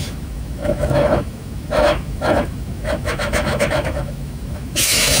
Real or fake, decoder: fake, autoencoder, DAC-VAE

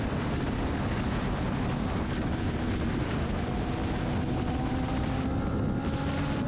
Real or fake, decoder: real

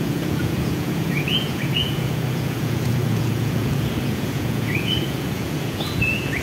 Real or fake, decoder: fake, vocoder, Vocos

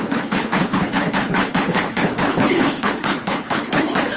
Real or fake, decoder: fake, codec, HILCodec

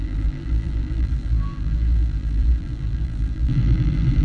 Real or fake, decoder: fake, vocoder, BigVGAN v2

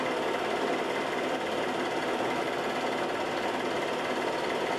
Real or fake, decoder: real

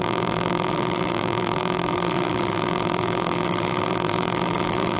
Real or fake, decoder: fake, vocoder, BigVGAN v2